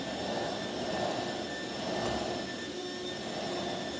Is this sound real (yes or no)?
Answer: yes